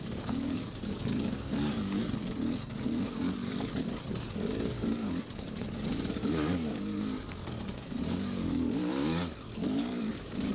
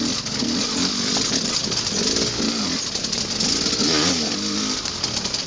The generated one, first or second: first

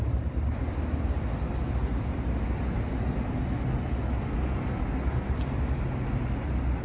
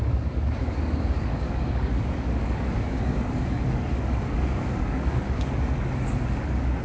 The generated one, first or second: second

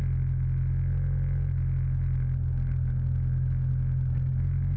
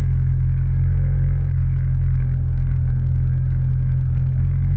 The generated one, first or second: second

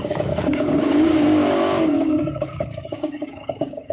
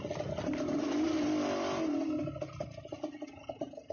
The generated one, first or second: first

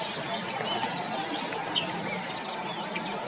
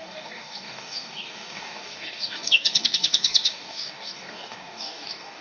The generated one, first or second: second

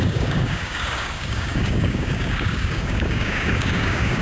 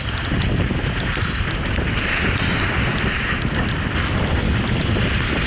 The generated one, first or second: first